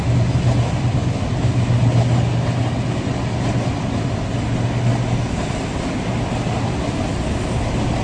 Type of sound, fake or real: real